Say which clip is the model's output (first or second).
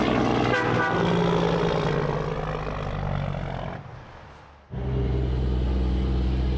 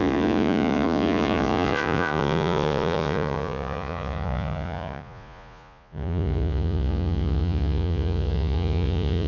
second